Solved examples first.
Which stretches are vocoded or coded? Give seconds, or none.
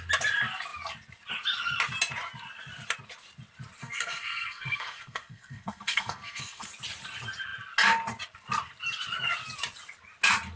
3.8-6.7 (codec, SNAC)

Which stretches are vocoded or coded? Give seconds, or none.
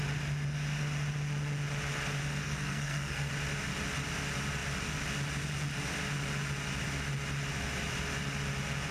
2.4-3.3 (codec, SNAC)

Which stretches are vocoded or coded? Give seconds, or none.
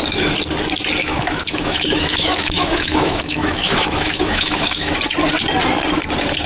1.0-4.9 (autoencoder, DAC-VAE)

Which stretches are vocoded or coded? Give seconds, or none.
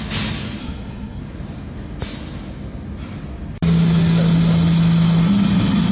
0.6-1.2 (codec, SNAC)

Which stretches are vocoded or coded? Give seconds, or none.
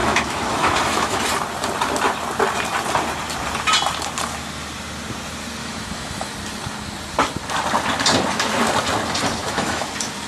0.0-1.2 (autoencoder, DAC-VAE); 5.6-6.3; 9.4-9.9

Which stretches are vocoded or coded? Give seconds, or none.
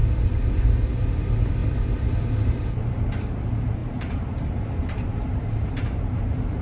1.6-3.2 (vocoder, BigVGAN v2); 3.8-6.6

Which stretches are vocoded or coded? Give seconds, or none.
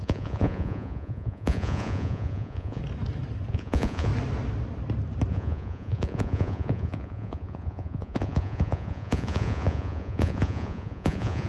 0.0-2.8 (vocoder, Vocos); 3.5-4.1; 5.3-11.5